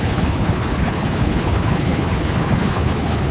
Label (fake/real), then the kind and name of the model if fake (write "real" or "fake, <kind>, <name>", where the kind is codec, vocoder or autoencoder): fake, codec, HILCodec